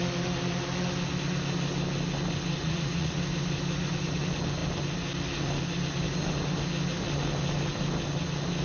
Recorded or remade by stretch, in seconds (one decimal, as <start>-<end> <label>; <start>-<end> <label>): 0.0-2.6 recorded; 2.6-3.2 remade; 3.2-8.6 recorded